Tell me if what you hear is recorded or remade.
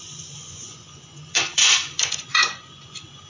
remade